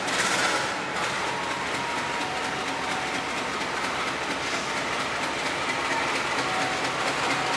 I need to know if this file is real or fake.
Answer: real